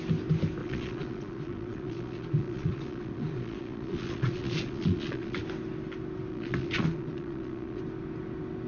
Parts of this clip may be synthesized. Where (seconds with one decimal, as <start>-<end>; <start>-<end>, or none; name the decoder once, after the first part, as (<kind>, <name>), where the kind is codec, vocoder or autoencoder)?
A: 0.6-5.4 (vocoder, Vocos); 6.3-7.8